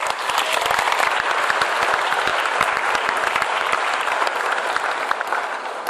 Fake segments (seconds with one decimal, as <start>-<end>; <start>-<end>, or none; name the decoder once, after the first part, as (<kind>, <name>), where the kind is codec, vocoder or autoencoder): 2.3-4.4 (vocoder, BigVGAN v2)